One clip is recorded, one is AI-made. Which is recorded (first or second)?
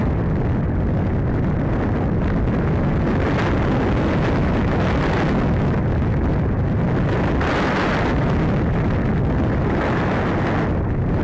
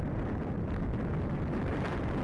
first